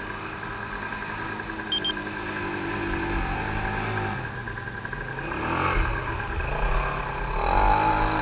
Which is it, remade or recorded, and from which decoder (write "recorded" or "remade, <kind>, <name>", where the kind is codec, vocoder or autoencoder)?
recorded